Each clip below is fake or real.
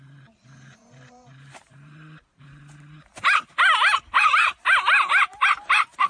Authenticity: fake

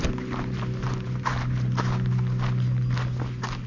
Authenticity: real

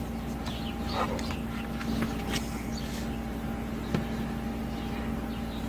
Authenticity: real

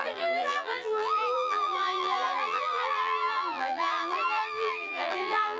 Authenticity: fake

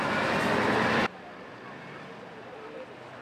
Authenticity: fake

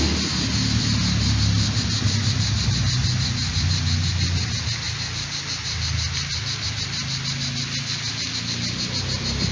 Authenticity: real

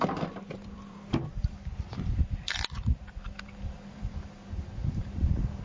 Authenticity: fake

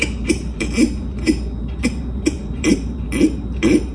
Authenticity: fake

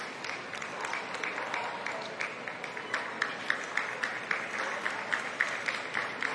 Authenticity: real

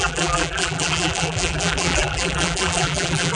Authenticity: fake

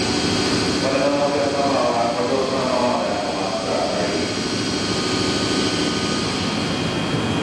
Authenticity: real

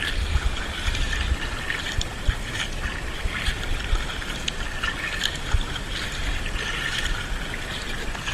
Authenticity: real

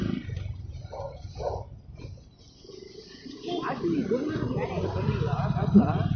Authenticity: fake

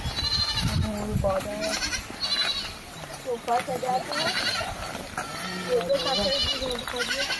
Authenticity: real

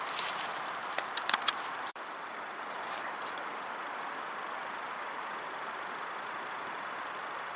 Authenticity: fake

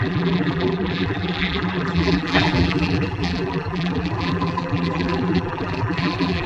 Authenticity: fake